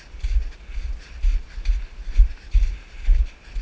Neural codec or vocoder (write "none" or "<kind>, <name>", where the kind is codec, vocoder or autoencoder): none